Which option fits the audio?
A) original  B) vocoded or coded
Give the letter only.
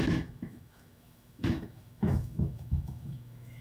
B